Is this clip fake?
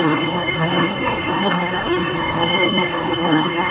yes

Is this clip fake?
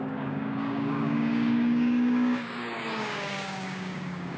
yes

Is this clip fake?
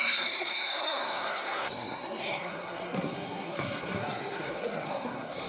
yes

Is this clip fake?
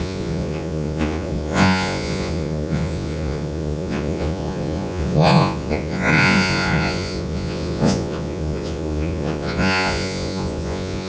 yes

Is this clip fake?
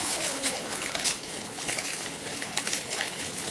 yes